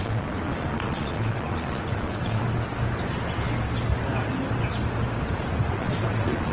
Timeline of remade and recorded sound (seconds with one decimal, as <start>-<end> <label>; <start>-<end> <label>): 0.0-2.4 remade; 2.4-5.7 recorded; 5.7-6.5 remade